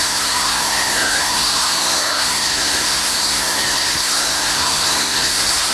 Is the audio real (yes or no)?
no